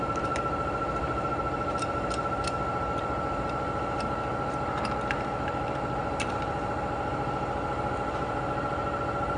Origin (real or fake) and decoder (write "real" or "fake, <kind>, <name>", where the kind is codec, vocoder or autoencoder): fake, vocoder, BigVGAN v2